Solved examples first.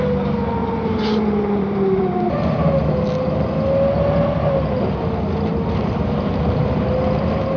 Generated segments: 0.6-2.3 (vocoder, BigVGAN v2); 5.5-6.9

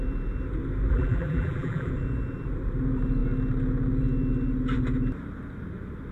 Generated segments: 0.9-1.9 (vocoder, BigVGAN v2)

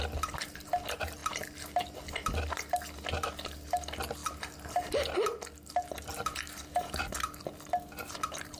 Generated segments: none

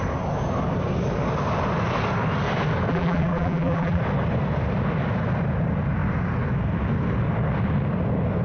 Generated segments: 2.9-4.0 (vocoder, BigVGAN v2)

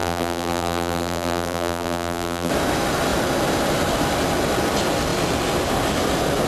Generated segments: 0.0-2.5 (vocoder, BigVGAN v2)